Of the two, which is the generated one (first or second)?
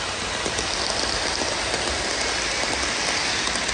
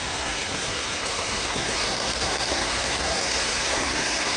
second